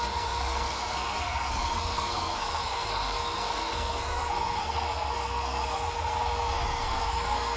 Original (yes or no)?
no